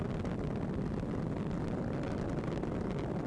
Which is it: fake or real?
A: real